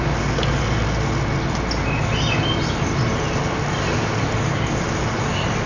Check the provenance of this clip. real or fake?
real